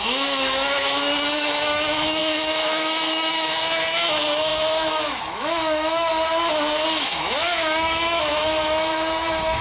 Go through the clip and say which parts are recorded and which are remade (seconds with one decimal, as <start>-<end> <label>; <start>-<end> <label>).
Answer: 0.0-6.1 remade; 6.1-7.0 recorded; 7.0-9.6 remade